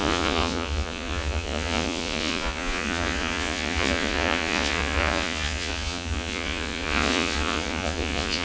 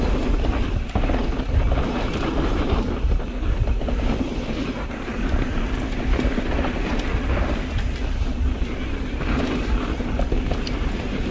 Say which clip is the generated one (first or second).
first